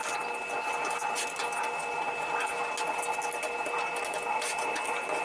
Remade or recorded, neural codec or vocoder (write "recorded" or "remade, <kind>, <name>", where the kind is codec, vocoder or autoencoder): recorded